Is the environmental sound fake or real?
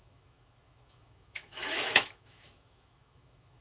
fake